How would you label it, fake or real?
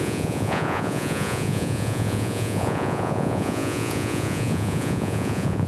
fake